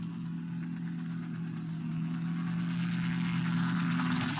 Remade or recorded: recorded